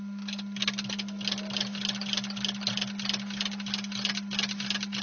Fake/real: real